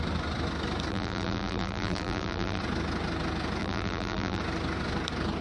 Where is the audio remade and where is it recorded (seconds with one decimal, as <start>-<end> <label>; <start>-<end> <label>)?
0.0-0.9 recorded; 0.9-2.6 remade; 2.6-3.6 recorded; 3.6-4.4 remade; 4.4-5.4 recorded